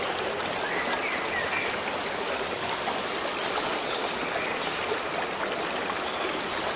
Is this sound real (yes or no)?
yes